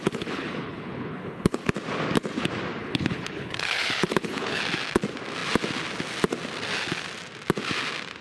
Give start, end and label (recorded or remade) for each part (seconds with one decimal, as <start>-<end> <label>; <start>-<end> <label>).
0.0-1.7 remade; 1.7-2.8 recorded; 2.8-4.6 remade; 4.6-8.2 recorded